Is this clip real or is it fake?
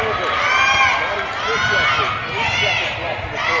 real